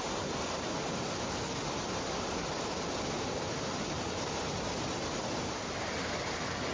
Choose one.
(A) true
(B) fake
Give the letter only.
A